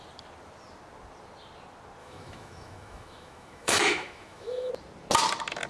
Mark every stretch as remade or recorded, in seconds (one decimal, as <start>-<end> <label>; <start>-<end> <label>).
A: 0.0-2.0 recorded; 2.0-4.7 remade; 4.7-5.7 recorded